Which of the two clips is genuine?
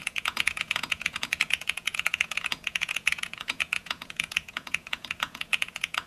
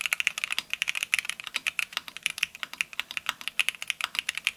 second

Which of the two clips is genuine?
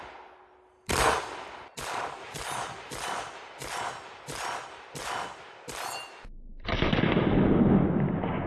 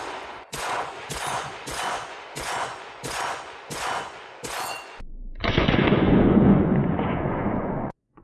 first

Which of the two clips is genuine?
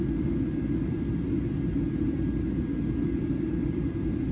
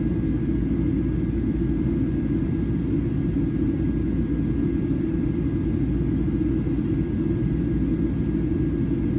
second